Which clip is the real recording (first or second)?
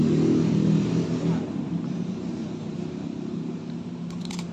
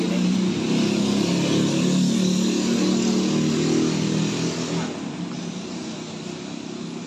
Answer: second